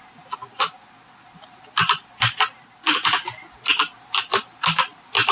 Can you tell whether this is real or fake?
real